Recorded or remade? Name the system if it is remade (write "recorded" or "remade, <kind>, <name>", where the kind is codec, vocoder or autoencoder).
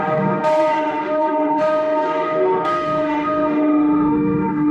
remade, autoencoder, DAC-VAE